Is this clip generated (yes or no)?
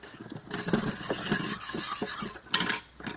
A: no